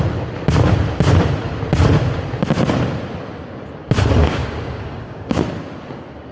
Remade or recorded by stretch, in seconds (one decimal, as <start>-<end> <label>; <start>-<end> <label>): 0.0-4.2 recorded; 4.2-5.4 remade; 5.4-6.3 recorded